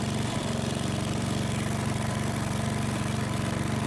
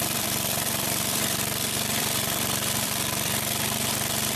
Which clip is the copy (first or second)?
second